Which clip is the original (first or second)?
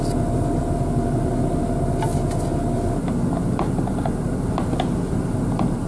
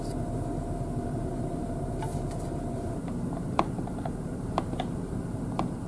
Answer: first